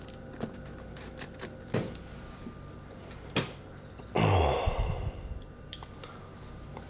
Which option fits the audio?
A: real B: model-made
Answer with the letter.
A